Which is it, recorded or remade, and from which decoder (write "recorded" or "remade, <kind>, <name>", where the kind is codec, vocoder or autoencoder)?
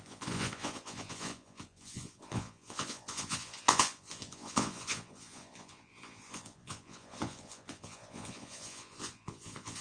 remade, vocoder, Vocos